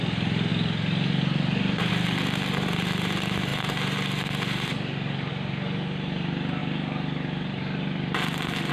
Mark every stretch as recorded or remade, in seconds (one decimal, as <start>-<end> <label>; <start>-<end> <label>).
0.0-0.5 recorded; 0.5-1.9 remade; 1.9-3.5 recorded; 3.5-5.3 remade; 5.3-6.6 recorded; 6.6-8.7 remade